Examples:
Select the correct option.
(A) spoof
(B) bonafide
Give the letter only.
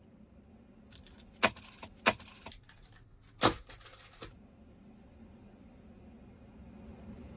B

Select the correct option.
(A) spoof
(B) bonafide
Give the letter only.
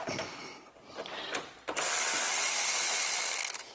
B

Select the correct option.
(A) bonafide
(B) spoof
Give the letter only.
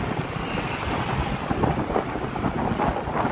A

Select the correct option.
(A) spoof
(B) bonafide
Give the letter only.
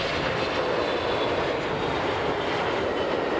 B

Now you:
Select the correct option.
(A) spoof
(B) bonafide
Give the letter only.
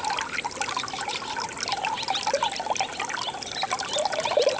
B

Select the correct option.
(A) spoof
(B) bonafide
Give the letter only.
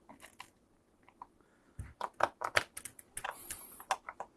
B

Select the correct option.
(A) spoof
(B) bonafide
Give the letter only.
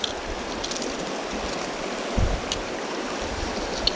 B